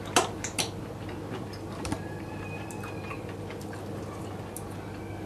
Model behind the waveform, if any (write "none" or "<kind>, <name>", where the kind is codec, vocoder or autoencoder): none